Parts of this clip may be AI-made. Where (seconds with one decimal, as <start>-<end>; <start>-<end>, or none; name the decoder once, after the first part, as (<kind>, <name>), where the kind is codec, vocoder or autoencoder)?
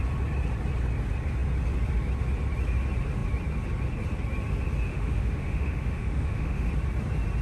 4.9-6.7 (autoencoder, DAC-VAE)